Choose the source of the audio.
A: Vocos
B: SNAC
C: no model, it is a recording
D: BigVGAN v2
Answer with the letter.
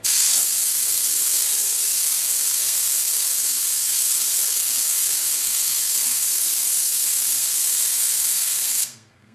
B